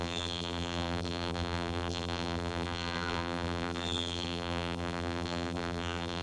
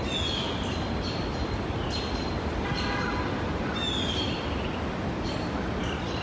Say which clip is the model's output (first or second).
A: first